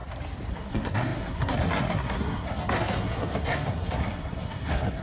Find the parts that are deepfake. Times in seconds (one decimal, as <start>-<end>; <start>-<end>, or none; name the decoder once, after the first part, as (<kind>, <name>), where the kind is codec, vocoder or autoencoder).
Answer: 0.5-5.0 (codec, SNAC)